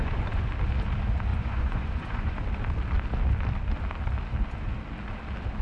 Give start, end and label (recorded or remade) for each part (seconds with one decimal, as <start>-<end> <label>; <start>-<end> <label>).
0.0-0.5 remade; 0.5-1.3 recorded; 1.3-2.4 remade; 2.4-5.6 recorded